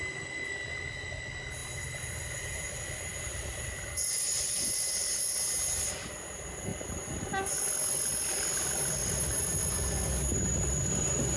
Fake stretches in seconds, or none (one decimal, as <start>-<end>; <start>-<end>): 1.6-5.2; 6.7-7.5; 9.0-9.7